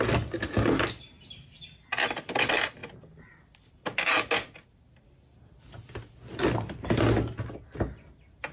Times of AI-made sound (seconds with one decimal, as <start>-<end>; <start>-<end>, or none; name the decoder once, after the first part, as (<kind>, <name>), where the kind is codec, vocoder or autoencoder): none